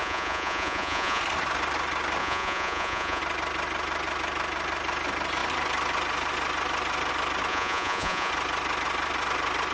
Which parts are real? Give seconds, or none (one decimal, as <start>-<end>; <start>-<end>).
1.2-2.2; 3.2-7.5; 8.3-9.7